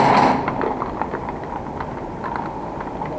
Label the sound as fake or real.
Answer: real